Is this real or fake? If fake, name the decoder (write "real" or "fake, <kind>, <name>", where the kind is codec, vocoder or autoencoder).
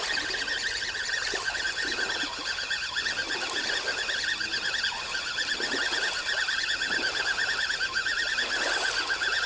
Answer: real